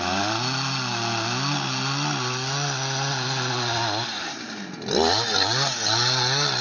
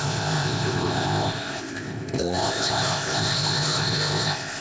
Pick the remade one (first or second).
second